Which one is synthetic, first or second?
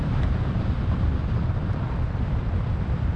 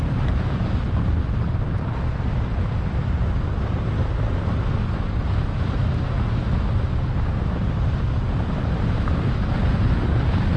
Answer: first